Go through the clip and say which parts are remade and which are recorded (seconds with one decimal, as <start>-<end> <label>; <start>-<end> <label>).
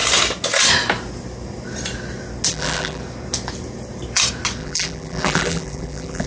0.0-2.5 recorded; 2.5-3.0 remade; 3.0-4.6 recorded; 4.6-6.3 remade